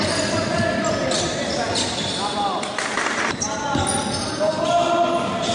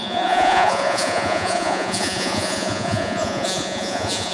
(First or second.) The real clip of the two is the first